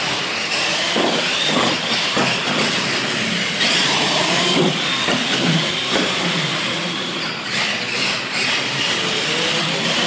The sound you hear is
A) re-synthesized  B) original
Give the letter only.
A